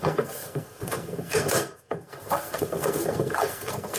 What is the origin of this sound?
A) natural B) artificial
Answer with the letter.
B